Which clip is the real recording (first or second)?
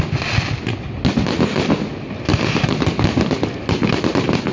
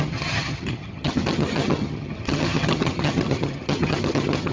first